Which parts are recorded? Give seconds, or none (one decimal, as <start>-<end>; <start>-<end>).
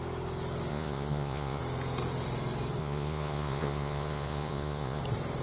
0.0-0.7; 1.6-2.8; 5.0-5.4